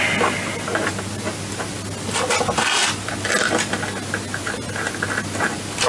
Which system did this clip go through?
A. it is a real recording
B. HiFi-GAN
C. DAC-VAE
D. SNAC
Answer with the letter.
A